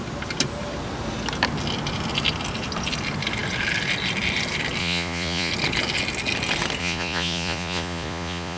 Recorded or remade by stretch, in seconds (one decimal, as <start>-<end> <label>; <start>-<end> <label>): 0.0-4.8 recorded; 4.8-5.5 remade; 5.5-6.8 recorded; 6.8-8.6 remade